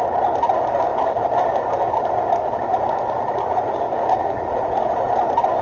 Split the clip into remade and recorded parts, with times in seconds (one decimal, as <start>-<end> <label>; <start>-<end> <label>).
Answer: 0.0-4.2 recorded; 4.2-5.1 remade; 5.1-5.6 recorded